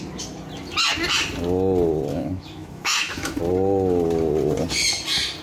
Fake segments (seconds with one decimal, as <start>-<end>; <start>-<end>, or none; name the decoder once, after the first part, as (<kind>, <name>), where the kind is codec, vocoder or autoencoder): 2.1-3.4 (autoencoder, DAC-VAE)